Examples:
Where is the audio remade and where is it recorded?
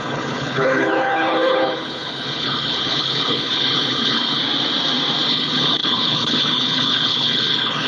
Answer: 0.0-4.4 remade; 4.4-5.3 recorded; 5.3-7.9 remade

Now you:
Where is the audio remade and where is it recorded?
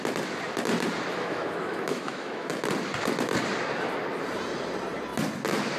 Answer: 0.0-1.1 recorded; 1.1-2.5 remade; 2.5-5.8 recorded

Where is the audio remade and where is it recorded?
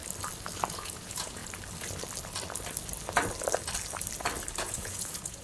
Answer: 0.0-0.7 recorded; 0.7-1.4 remade; 1.4-4.6 recorded; 4.6-5.4 remade